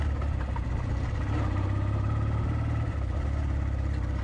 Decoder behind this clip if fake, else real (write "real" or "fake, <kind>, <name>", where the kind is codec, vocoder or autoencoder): real